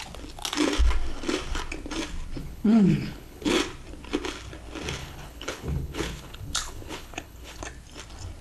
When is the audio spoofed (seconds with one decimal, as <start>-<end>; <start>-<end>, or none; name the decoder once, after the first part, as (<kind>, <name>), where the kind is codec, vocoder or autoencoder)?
2.4-3.5 (codec, HILCodec); 5.0-7.6

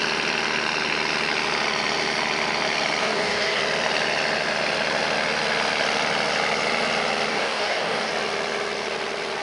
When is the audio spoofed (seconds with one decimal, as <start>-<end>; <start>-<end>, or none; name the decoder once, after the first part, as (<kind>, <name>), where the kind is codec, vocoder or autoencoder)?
3.0-3.6 (codec, DAC); 7.3-8.1

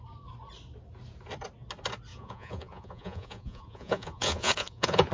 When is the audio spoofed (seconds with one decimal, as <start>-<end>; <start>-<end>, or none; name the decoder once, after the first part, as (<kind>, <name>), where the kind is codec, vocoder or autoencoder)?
2.1-5.1 (vocoder, Vocos)

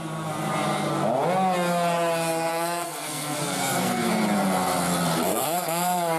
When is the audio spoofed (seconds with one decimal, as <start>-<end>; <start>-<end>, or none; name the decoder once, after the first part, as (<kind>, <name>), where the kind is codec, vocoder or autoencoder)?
2.5-4.1 (codec, SNAC); 5.3-6.2